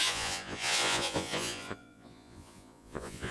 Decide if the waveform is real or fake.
fake